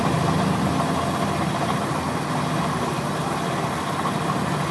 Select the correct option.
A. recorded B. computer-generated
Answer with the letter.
A